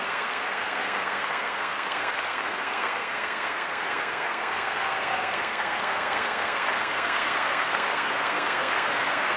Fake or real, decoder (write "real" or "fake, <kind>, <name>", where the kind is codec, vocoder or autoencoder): fake, codec, SNAC